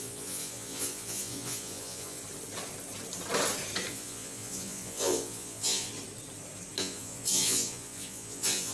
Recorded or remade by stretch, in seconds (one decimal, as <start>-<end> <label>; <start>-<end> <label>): 0.0-2.2 remade; 2.2-3.9 recorded; 3.9-5.9 remade; 5.9-6.8 recorded; 6.8-8.7 remade